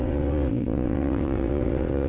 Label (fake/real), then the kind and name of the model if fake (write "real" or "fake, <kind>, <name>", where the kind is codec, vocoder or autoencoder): fake, vocoder, WaveNeXt